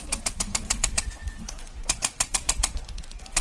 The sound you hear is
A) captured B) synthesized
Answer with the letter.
B